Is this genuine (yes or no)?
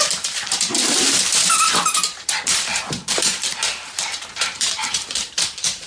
no